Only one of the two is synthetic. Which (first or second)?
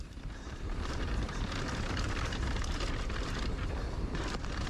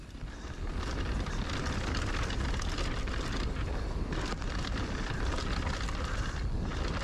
first